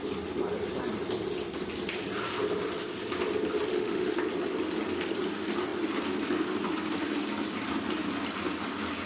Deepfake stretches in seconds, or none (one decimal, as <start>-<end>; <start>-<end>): 3.7-4.2